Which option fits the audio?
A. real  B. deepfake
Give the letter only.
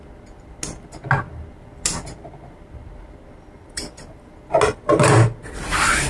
A